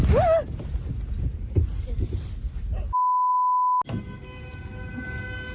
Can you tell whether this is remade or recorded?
recorded